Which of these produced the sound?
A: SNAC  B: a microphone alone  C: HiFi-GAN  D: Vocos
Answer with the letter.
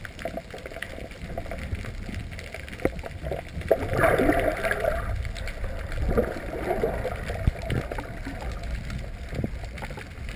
B